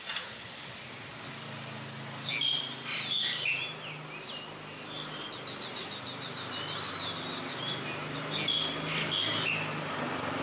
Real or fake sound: real